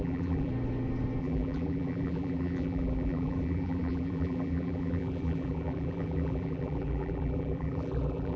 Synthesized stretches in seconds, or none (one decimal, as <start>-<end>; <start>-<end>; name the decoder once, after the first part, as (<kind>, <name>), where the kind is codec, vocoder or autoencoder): 0.0-0.5 (vocoder, BigVGAN v2); 1.2-8.4